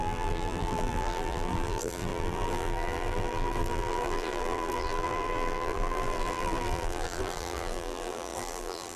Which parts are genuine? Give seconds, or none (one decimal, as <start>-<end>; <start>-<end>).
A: none